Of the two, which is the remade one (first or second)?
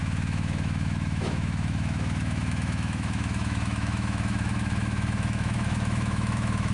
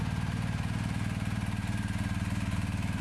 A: first